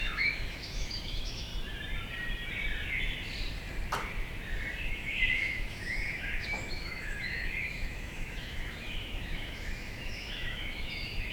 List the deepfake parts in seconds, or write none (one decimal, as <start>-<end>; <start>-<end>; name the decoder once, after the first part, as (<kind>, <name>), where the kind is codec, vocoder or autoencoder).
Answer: 0.0-1.5 (autoencoder, DAC-VAE); 4.8-11.3